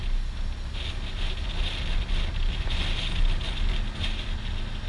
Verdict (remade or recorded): recorded